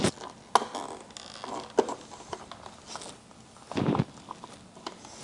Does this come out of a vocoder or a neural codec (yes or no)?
no